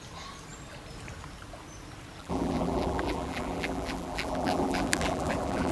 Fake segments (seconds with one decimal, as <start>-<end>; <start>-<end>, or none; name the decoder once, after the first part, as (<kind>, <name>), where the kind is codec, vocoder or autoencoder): 2.2-5.7 (vocoder, BigVGAN v2)

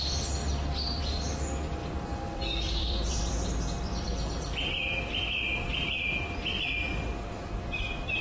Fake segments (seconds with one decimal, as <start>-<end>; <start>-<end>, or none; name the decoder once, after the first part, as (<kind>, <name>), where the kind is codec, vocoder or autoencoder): 1.8-6.6 (vocoder, BigVGAN v2)

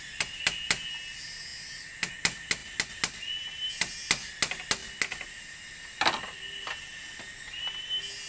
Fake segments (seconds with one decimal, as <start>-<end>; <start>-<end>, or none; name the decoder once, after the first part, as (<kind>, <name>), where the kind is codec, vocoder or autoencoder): none

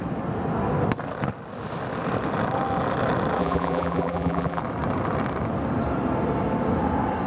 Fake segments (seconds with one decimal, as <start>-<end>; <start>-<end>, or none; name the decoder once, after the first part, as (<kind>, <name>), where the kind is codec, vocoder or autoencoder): 3.4-4.6 (vocoder, BigVGAN v2)

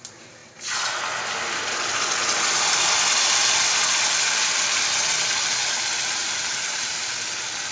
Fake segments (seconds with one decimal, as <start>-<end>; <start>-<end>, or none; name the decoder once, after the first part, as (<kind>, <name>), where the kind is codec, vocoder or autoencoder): 6.2-7.1 (vocoder, BigVGAN v2)

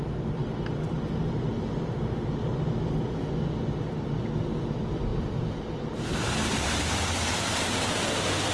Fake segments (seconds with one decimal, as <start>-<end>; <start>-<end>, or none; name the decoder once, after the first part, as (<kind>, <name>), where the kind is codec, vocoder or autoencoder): 5.1-8.5 (vocoder, BigVGAN v2)